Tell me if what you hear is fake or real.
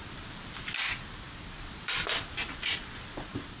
real